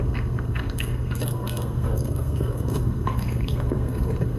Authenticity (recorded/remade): remade